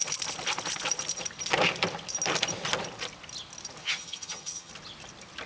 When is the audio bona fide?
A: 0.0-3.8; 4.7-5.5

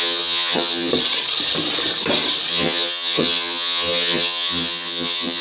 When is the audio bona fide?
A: 0.9-2.5

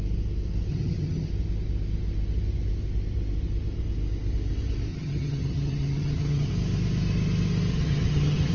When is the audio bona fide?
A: 0.0-0.7; 1.3-4.9; 6.5-7.7

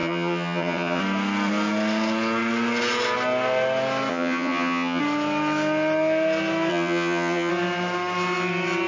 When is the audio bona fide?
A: 1.0-4.1; 5.0-6.7; 7.5-8.9

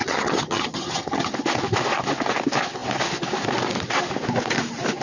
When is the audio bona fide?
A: 1.3-5.0